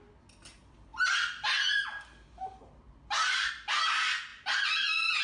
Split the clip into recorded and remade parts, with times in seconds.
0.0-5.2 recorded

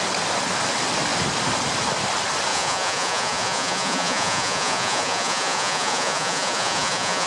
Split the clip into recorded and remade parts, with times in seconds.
0.0-2.5 recorded; 2.5-7.3 remade